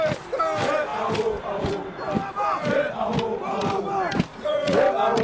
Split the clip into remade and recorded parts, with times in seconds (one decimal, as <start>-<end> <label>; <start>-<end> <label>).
0.0-4.3 recorded; 4.3-4.8 remade; 4.8-5.2 recorded